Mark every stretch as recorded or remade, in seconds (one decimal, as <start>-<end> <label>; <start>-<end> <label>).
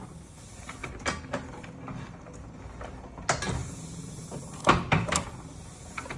0.0-3.6 recorded; 3.6-5.3 remade; 5.3-6.2 recorded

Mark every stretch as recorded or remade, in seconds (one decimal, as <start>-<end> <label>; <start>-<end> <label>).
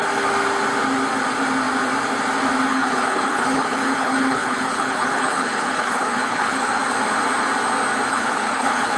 0.0-2.7 recorded; 2.7-6.8 remade; 6.8-8.1 recorded; 8.1-9.0 remade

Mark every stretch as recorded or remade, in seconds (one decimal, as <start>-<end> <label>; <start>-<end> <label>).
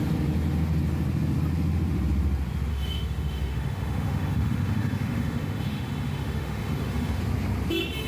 0.0-2.7 recorded; 2.7-7.2 remade; 7.2-8.1 recorded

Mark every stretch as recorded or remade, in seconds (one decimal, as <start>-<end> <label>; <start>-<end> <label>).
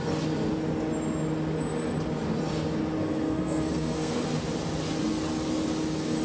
0.0-3.0 recorded; 3.0-4.2 remade; 4.2-6.2 recorded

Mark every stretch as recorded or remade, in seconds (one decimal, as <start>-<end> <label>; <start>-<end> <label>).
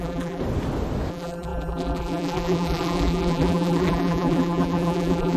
0.0-0.4 remade; 0.4-1.1 recorded; 1.1-5.4 remade